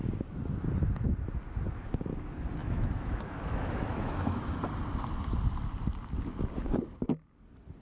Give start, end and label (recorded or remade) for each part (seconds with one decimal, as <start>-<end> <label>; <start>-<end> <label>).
0.0-2.6 recorded; 2.6-4.6 remade; 4.6-7.8 recorded